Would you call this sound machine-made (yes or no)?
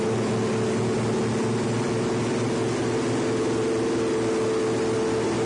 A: no